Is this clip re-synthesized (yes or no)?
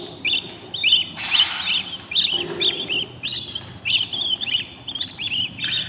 no